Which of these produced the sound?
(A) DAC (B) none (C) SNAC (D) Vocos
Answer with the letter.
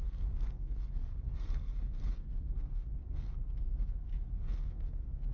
C